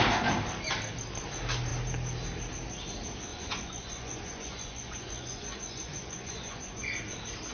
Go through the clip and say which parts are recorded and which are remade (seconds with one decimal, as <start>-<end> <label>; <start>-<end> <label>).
0.0-3.3 recorded; 3.3-7.0 remade; 7.0-7.5 recorded

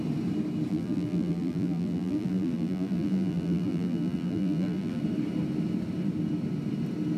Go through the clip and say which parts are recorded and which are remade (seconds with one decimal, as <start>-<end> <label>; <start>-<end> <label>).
0.0-0.7 recorded; 0.7-5.0 remade; 5.0-7.2 recorded

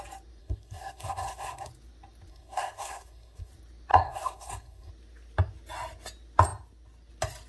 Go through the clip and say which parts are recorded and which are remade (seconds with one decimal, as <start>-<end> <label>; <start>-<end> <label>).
0.0-0.4 recorded; 0.4-1.7 remade; 1.7-2.3 recorded; 2.3-3.5 remade; 3.5-3.9 recorded; 3.9-4.9 remade; 4.9-7.5 recorded

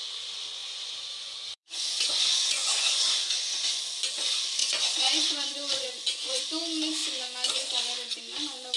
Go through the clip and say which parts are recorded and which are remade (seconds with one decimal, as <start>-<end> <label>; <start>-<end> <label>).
0.0-0.6 recorded; 0.6-3.8 remade; 3.8-4.6 recorded; 4.6-6.4 remade; 6.4-8.8 recorded

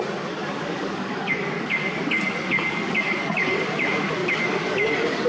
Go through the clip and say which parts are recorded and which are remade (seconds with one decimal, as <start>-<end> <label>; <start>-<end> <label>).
0.0-0.4 recorded; 0.4-3.6 remade; 3.6-4.2 recorded; 4.2-5.3 remade

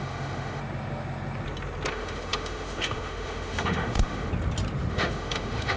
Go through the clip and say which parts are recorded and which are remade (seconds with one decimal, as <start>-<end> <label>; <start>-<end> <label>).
0.0-0.6 remade; 0.6-1.9 recorded; 1.9-4.3 remade; 4.3-4.9 recorded; 4.9-5.8 remade

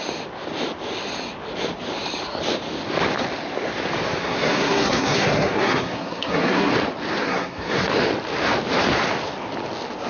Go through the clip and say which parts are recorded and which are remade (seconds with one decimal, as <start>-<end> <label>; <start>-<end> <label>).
0.0-4.2 recorded; 4.2-6.7 remade; 6.7-7.2 recorded; 7.2-7.9 remade; 7.9-10.1 recorded